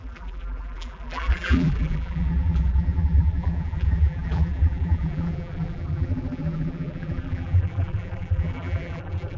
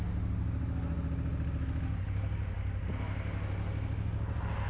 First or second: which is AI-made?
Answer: first